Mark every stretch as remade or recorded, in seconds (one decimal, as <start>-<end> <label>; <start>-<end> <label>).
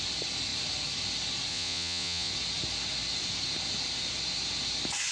0.0-1.5 recorded; 1.5-2.3 remade; 2.3-5.1 recorded